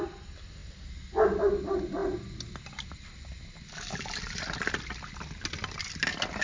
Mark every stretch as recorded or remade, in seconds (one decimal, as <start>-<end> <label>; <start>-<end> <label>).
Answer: 0.0-6.4 recorded